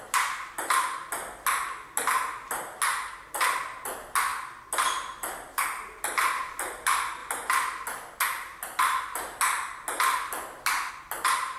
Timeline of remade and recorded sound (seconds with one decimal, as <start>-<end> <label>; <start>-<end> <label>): 0.0-11.6 recorded